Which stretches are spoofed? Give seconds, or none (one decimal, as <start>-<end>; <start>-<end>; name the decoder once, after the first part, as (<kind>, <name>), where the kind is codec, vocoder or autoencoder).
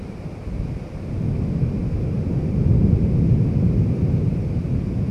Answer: none